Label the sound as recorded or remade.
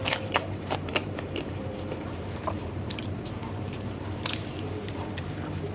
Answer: remade